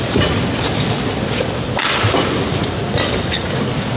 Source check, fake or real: real